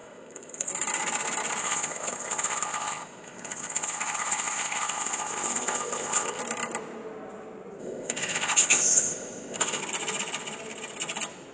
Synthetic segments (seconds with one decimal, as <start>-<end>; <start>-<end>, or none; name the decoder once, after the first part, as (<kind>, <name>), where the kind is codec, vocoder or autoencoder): 0.0-0.7 (codec, ZipCodec); 1.6-6.4; 7.8-9.8